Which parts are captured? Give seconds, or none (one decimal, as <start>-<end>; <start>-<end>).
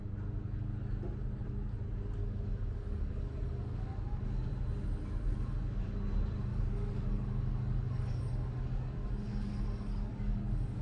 0.0-2.2; 4.5-6.5